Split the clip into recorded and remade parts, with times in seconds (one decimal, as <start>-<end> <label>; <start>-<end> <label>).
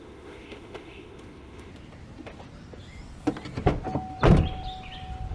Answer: 0.0-1.7 remade; 1.7-5.3 recorded